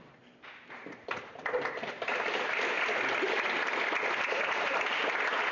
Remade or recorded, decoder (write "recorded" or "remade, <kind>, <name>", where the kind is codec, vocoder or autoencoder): recorded